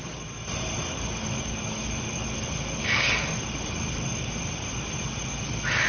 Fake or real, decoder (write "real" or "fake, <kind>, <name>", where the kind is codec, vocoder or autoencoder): real